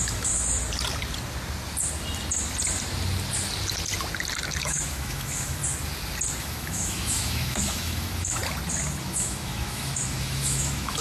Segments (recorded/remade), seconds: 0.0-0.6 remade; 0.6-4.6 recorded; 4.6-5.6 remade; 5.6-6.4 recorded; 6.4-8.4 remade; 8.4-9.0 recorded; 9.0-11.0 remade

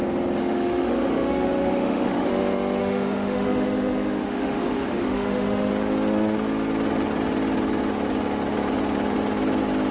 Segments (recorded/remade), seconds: 0.0-0.4 recorded; 0.4-2.3 remade; 2.3-2.8 recorded; 2.8-5.7 remade; 5.7-9.9 recorded